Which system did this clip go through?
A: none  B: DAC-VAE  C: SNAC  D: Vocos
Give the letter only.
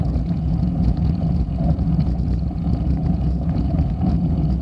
D